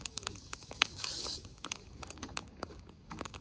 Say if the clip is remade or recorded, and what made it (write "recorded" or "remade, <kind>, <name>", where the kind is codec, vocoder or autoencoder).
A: remade, codec, DAC